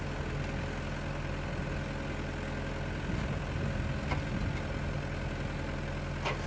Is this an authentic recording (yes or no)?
yes